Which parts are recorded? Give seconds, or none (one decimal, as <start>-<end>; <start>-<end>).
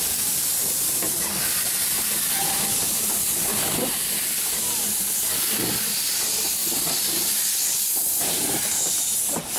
6.6-8.2